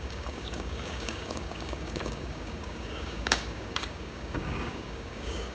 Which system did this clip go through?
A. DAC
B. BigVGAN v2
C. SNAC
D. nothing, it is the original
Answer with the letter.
A